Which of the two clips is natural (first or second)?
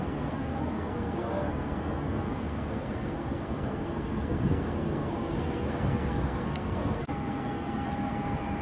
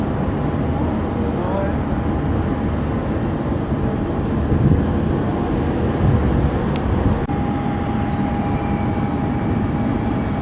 second